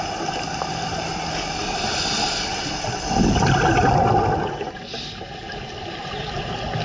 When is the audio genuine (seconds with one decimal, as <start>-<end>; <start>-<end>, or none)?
0.0-6.8